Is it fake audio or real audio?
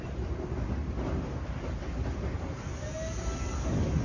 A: real